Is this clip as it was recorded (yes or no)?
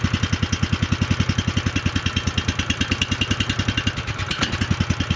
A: yes